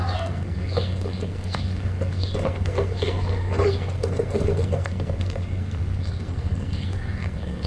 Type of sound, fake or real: fake